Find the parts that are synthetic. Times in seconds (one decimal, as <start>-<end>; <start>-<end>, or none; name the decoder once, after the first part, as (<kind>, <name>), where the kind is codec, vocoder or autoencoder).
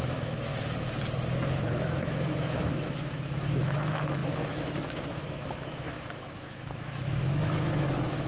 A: 0.0-0.5 (autoencoder, DAC-VAE); 1.8-8.3